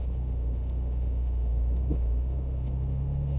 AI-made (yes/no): yes